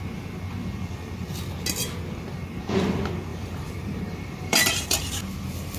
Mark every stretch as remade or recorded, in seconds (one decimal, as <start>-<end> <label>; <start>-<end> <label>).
0.0-3.3 recorded; 3.3-5.0 remade; 5.0-5.8 recorded